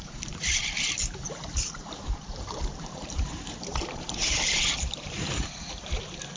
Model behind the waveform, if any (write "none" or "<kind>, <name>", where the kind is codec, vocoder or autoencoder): vocoder, BigVGAN v2